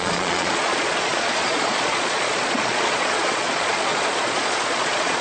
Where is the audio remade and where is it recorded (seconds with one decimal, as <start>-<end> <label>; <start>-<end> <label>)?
0.0-5.2 remade